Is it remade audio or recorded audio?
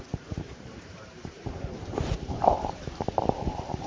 remade